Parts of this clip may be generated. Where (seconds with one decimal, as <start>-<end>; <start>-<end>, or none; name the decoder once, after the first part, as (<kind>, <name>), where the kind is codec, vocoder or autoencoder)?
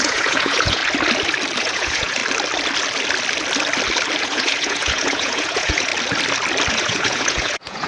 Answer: 0.0-0.8 (vocoder, Vocos); 1.6-2.2; 4.2-5.9; 6.7-7.9